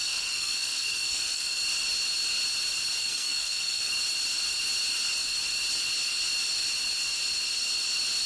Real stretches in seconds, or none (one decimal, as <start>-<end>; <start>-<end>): 1.6-3.0; 3.9-8.3